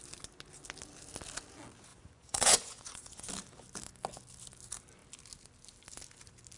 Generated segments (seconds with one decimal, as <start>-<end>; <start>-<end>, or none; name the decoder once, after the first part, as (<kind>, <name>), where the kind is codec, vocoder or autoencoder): 1.9-3.3 (vocoder, Vocos)